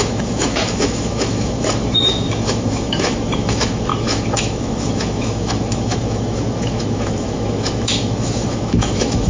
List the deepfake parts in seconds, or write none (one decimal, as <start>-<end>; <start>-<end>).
0.0-9.3